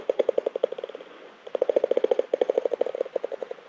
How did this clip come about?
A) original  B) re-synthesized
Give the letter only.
B